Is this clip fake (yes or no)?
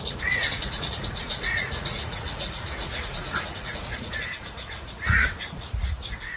yes